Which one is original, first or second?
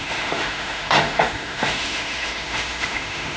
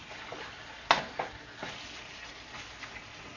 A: second